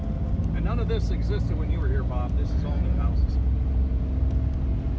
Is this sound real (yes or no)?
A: yes